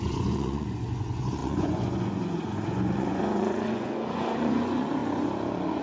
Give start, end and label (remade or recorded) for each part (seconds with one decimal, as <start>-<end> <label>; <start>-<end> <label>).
0.0-5.8 remade